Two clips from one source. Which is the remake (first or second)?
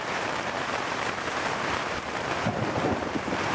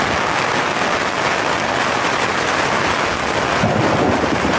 first